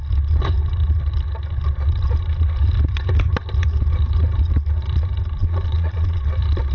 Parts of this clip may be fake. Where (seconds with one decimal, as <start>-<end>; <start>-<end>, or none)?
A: 5.4-6.3